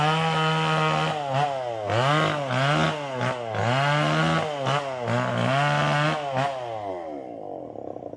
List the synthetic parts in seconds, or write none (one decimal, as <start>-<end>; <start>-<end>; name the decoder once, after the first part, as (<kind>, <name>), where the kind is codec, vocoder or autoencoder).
none